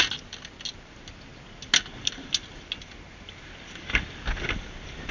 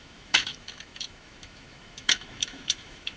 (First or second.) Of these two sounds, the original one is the first